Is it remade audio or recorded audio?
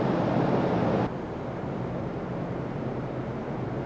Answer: remade